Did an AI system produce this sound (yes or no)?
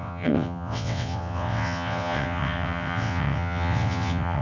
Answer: yes